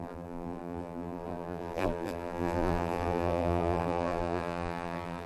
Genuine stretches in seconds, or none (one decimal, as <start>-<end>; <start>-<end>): none